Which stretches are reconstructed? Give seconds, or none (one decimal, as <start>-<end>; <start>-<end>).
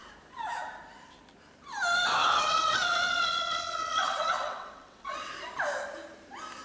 2.2-5.3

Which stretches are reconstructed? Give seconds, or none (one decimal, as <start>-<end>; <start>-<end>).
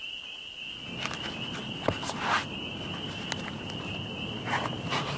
none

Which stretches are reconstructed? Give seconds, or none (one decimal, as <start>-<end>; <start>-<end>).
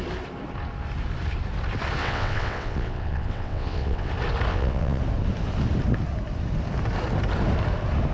2.0-4.1; 4.5-5.0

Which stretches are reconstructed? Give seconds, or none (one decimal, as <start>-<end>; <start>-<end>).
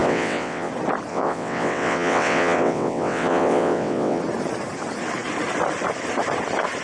0.0-0.7; 1.1-4.2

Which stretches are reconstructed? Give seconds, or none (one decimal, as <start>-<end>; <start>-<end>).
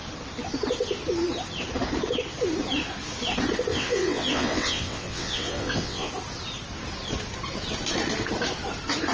3.7-6.1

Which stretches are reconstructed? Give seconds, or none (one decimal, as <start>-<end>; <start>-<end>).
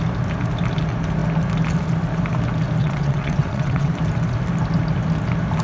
2.8-3.9